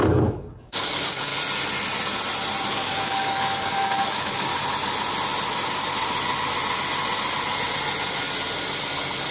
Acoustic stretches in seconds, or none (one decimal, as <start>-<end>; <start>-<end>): 1.3-2.7; 4.5-9.3